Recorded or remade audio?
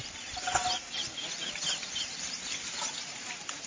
recorded